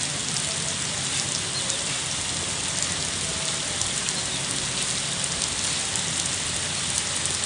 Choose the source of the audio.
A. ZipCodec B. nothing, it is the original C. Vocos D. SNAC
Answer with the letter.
B